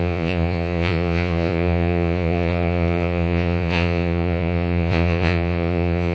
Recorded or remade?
remade